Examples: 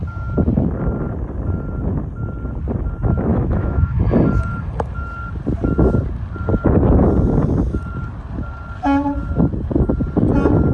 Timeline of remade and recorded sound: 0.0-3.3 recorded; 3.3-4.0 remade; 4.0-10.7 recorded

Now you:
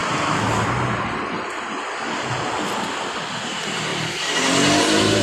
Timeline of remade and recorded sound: 0.0-5.2 recorded

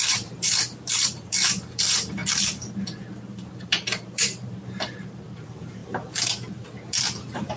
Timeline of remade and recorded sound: 0.0-7.6 remade

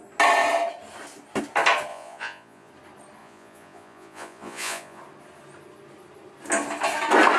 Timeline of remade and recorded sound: 0.0-1.9 recorded; 1.9-2.7 remade; 2.7-3.2 recorded; 3.2-5.0 remade; 5.0-7.4 recorded